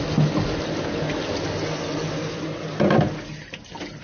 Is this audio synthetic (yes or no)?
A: no